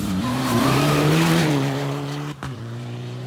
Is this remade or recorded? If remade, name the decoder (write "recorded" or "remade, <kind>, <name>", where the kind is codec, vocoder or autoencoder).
remade, vocoder, BigVGAN v2